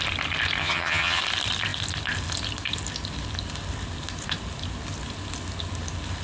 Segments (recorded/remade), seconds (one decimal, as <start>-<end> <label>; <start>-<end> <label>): 0.0-0.6 recorded; 0.6-1.2 remade; 1.2-6.2 recorded